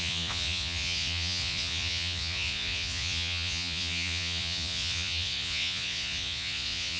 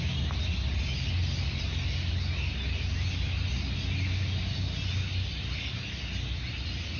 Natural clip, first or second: second